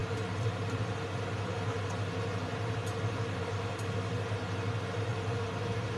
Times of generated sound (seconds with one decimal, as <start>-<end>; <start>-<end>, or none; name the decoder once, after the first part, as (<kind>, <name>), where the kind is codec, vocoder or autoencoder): none